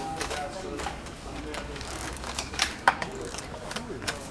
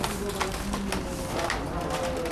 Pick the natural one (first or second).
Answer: second